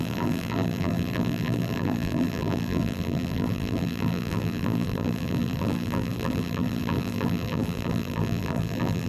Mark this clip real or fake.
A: fake